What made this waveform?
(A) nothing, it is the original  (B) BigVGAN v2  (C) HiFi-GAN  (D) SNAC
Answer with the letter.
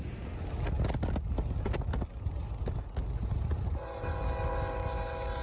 A